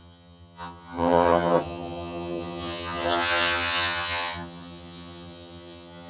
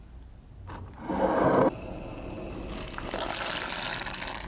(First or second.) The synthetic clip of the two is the first